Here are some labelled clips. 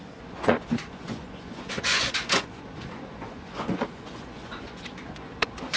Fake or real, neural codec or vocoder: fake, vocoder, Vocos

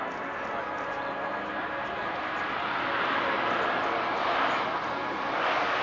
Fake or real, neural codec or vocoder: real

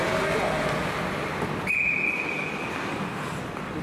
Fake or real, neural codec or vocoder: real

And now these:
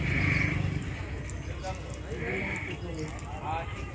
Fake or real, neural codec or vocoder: real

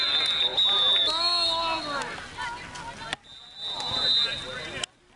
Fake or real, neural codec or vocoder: real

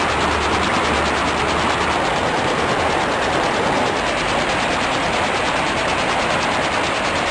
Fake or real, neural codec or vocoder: real